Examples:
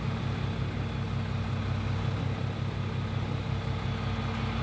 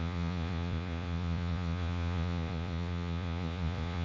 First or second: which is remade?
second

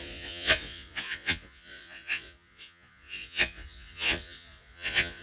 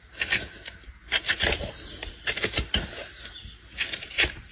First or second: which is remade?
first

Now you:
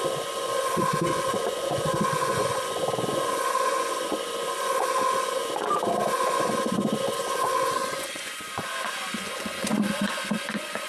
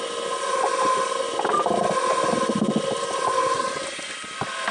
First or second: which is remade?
first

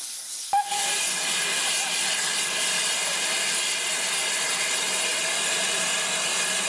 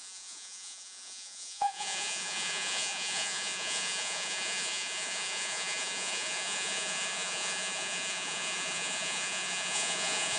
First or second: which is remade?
second